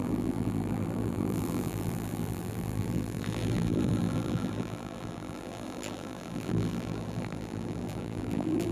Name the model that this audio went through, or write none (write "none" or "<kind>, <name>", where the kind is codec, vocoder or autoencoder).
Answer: vocoder, BigVGAN v2